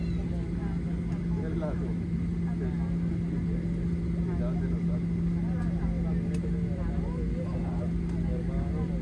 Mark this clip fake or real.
real